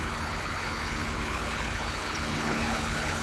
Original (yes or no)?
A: no